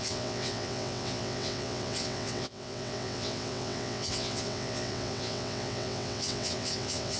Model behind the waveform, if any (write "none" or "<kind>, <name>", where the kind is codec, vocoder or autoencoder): vocoder, WaveNeXt